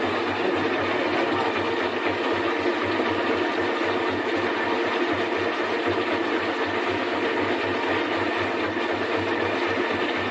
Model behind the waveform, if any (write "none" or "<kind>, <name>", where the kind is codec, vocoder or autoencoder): none